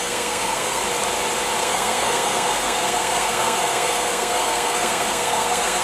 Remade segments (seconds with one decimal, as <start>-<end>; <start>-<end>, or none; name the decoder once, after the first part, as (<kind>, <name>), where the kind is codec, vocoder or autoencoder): 0.0-0.8 (codec, SNAC); 1.6-5.8